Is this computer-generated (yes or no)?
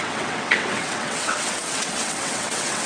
yes